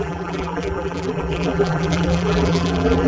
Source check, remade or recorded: remade